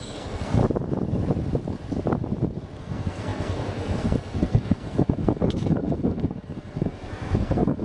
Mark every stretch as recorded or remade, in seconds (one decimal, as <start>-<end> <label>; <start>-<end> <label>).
0.0-0.6 remade; 0.6-2.8 recorded; 2.8-7.8 remade